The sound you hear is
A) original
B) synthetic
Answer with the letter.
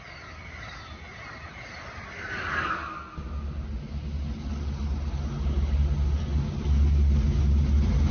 A